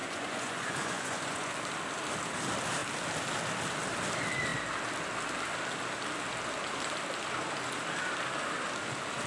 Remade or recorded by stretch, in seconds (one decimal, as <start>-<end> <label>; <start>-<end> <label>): 0.0-1.5 remade; 1.5-9.3 recorded